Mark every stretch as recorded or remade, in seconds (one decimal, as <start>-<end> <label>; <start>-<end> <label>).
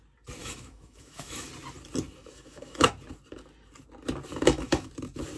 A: 0.0-0.4 recorded; 0.4-1.5 remade; 1.5-2.2 recorded; 2.2-2.9 remade; 2.9-4.3 recorded; 4.3-4.9 remade; 4.9-5.4 recorded